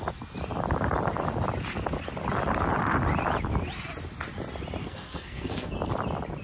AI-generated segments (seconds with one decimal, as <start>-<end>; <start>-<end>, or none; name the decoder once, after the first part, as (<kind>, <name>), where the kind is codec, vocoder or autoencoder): 4.8-5.7 (codec, SNAC)